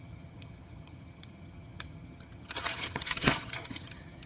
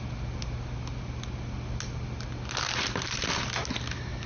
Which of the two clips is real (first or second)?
second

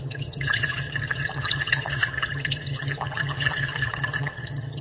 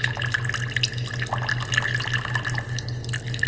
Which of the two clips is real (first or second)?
second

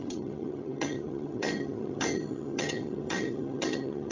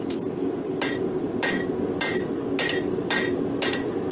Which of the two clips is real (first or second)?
second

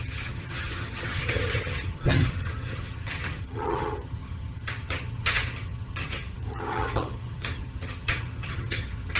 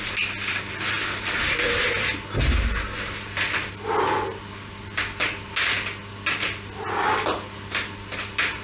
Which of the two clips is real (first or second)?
second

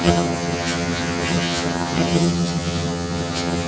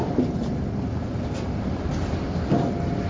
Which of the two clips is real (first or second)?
second